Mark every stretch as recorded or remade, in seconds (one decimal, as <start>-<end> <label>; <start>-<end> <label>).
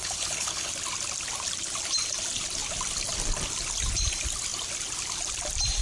0.0-0.7 remade; 0.7-5.8 recorded